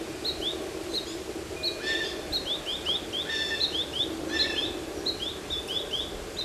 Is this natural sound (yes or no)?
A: yes